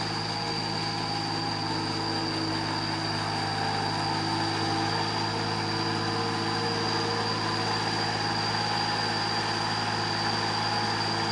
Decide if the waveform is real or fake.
real